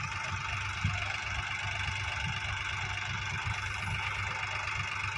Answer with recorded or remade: recorded